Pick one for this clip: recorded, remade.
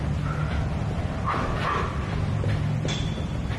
remade